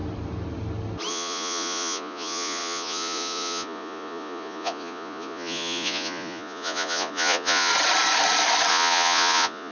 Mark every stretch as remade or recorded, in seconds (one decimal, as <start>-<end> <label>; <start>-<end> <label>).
0.0-1.1 recorded; 1.1-7.7 remade; 7.7-8.7 recorded; 8.7-9.7 remade